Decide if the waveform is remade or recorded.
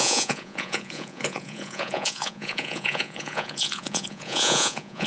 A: remade